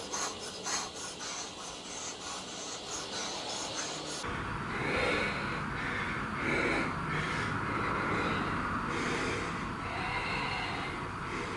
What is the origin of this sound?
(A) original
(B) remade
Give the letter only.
A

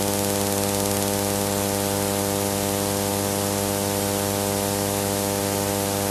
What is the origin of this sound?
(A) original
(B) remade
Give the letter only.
A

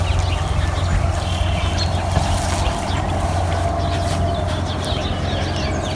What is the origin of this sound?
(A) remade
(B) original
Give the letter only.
B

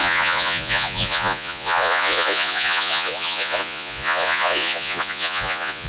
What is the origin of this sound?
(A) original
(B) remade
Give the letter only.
B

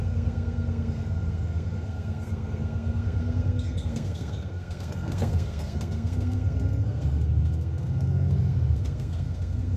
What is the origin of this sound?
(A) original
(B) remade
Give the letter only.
B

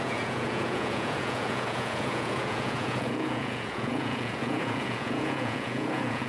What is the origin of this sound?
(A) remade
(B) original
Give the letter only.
A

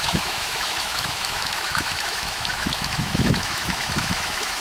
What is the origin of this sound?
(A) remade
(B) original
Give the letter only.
A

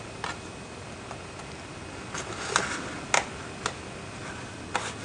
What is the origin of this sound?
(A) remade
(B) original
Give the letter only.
B